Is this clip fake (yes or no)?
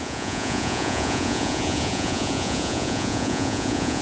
yes